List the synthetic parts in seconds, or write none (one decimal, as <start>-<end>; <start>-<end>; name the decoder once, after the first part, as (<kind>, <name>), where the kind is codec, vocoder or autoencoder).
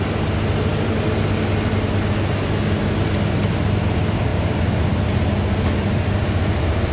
none